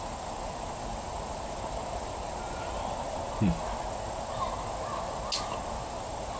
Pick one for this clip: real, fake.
real